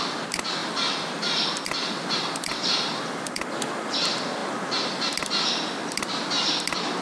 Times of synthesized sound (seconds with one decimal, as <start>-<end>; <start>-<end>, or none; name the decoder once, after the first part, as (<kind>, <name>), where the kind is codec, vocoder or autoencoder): 0.6-3.9 (vocoder, BigVGAN v2)

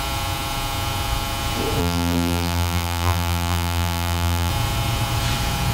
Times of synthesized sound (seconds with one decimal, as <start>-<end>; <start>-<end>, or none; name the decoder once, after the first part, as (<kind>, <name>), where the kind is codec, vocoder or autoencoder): 1.8-4.5 (vocoder, BigVGAN v2)

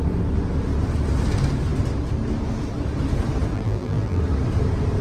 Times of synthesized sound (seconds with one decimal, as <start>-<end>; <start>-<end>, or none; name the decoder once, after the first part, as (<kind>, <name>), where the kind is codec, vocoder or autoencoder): 3.5-4.2 (vocoder, BigVGAN v2)

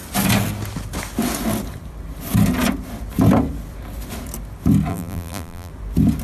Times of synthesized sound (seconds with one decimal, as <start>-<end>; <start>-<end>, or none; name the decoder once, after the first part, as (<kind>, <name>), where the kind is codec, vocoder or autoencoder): 4.9-5.7 (vocoder, BigVGAN v2)

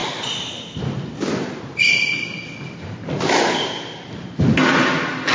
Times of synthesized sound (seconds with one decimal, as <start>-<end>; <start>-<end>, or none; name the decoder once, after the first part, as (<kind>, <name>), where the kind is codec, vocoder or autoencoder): none